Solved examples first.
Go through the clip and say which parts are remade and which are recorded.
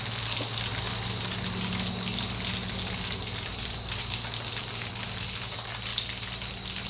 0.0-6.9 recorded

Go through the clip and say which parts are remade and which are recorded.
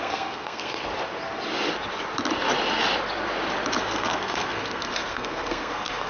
0.0-0.8 remade; 0.8-3.8 recorded; 3.8-6.1 remade